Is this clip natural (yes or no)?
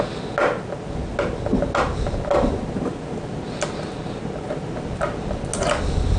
yes